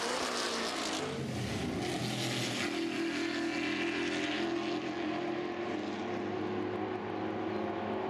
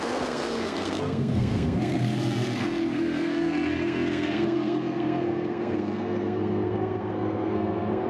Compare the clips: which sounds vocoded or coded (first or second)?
second